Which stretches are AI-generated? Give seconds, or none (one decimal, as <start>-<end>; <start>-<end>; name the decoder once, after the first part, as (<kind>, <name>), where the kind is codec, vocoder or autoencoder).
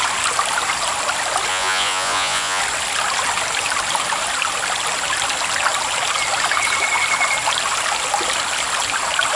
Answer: 1.5-2.6 (vocoder, Vocos)